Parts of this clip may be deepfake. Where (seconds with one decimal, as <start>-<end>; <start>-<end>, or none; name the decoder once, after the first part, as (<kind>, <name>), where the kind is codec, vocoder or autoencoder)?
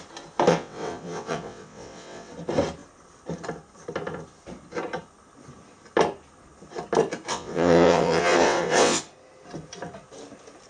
0.5-2.3 (vocoder, WaveNeXt); 7.3-9.0